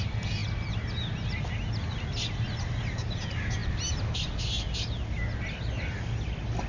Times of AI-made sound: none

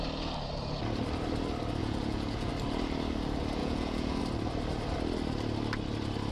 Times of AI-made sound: 1.8-2.5 (vocoder, Vocos); 3.6-4.2

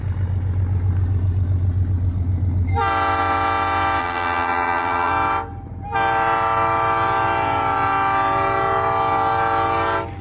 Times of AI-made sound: 4.0-5.1 (vocoder, BigVGAN v2)

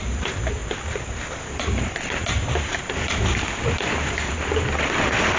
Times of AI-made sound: none

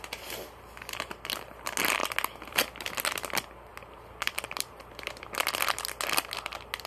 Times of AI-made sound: 3.7-5.2 (vocoder, BigVGAN v2)

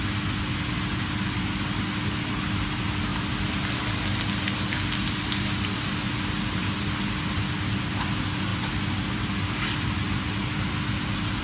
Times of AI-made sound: none